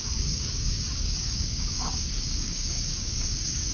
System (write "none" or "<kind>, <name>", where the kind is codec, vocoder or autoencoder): codec, DAC